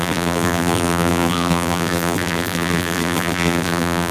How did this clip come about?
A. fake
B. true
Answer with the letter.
A